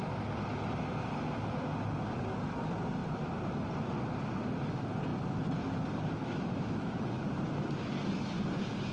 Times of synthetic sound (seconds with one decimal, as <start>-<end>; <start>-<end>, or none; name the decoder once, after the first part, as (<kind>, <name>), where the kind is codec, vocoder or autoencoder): 6.2-7.2 (autoencoder, DAC-VAE)